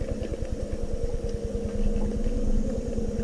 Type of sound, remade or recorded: recorded